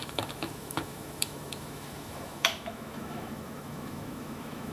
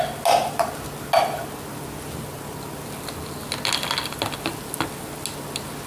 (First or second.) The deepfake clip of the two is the first